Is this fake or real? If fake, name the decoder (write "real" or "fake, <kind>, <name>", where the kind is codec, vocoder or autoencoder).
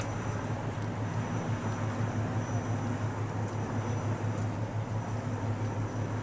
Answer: real